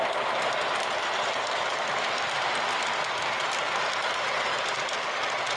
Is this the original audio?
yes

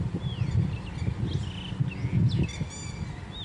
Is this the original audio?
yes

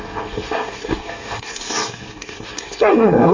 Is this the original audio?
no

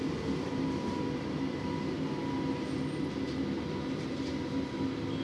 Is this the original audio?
yes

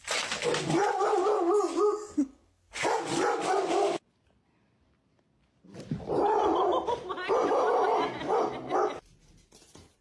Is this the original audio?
yes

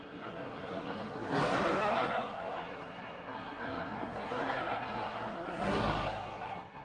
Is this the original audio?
no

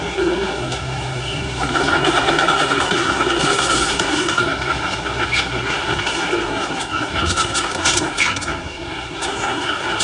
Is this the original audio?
no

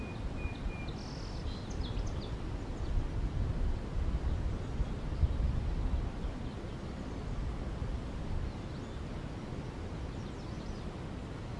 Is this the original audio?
yes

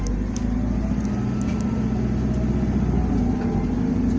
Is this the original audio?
yes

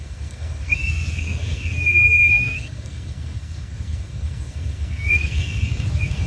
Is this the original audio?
no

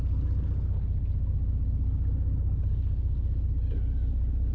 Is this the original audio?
yes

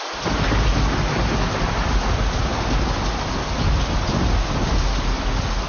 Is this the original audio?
yes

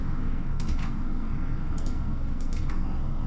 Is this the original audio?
no